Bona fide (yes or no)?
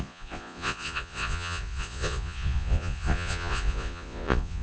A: no